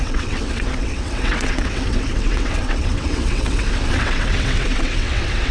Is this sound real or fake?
fake